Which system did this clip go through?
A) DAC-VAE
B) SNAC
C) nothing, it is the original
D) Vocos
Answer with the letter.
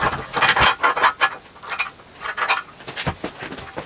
C